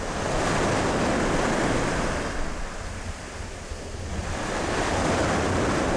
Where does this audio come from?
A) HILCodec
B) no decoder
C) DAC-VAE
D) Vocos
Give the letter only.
B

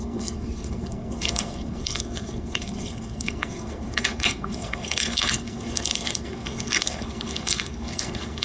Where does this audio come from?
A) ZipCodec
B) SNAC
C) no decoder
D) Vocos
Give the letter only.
B